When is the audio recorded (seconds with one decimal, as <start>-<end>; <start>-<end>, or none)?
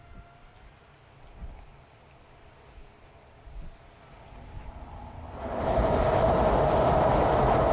0.0-2.8; 7.1-7.7